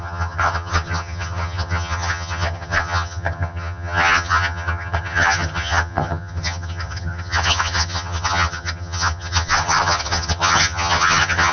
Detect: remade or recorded remade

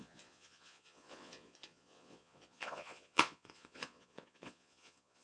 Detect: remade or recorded remade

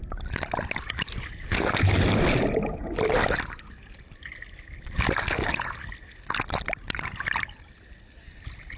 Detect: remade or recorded recorded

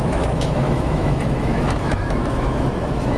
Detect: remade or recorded remade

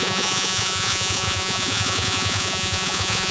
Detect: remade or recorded remade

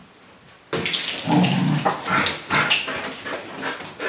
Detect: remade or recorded recorded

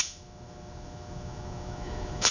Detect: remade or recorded remade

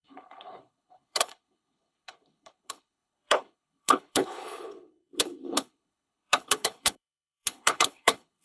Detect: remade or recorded remade